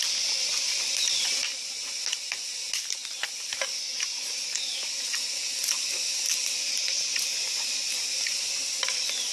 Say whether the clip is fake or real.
real